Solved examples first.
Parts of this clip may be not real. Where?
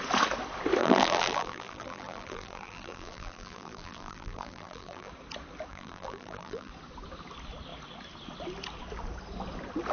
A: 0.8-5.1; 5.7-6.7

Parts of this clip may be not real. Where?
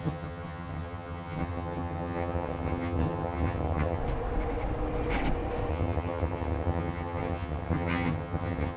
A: 0.0-4.0; 5.7-8.8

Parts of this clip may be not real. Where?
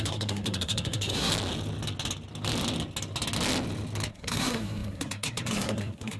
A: 0.0-1.3; 4.1-6.2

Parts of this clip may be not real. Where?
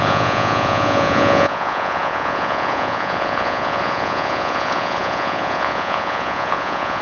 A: 0.0-7.0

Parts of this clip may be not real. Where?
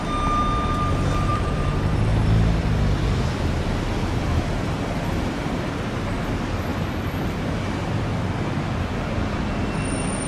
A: 1.3-6.2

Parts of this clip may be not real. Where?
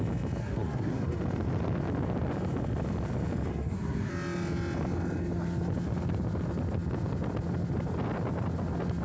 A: 0.4-1.2; 3.5-4.1